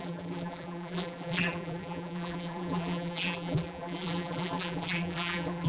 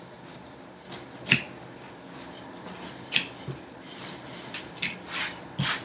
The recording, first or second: second